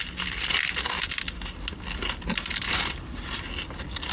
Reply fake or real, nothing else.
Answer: real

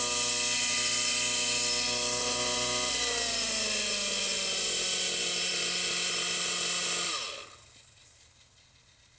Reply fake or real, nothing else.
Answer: real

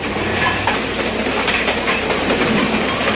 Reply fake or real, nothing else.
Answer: fake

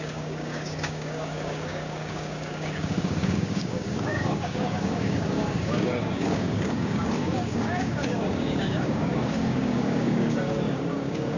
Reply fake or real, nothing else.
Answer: fake